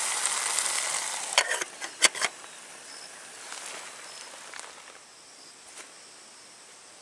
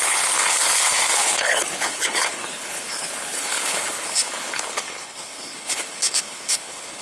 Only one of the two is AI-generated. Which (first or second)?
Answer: second